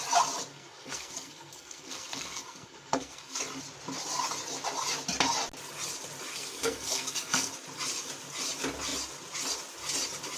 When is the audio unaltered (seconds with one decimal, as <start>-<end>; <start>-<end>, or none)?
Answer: 0.0-0.5; 3.4-6.3; 7.5-10.4